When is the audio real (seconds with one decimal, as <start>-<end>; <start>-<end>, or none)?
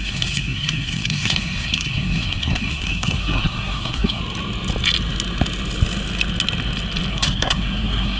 4.2-7.1